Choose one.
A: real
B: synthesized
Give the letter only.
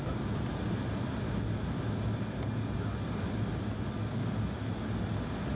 A